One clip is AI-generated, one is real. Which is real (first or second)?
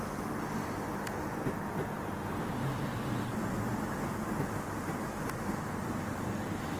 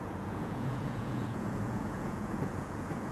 first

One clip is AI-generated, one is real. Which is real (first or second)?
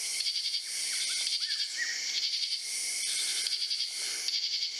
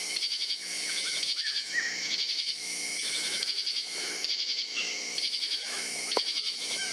first